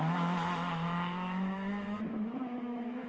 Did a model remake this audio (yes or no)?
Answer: yes